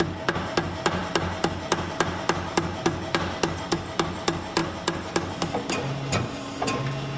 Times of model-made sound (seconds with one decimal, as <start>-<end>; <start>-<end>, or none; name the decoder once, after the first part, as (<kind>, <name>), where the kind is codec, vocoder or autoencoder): none